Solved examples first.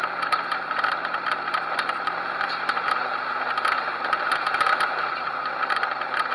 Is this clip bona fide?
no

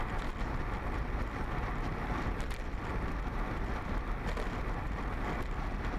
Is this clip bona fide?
yes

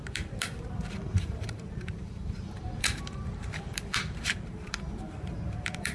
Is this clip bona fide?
no